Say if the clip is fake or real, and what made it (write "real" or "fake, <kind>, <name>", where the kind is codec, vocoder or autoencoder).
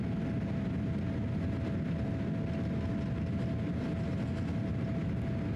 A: real